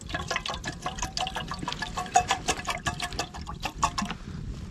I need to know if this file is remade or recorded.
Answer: recorded